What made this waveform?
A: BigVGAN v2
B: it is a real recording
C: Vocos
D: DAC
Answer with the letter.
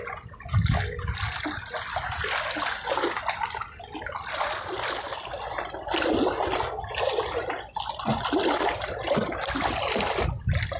B